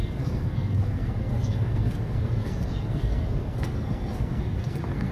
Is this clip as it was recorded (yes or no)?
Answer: no